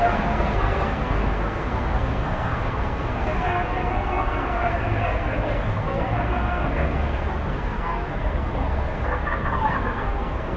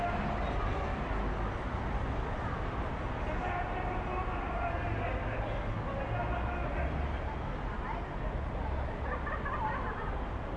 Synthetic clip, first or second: first